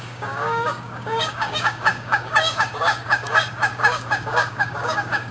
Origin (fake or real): fake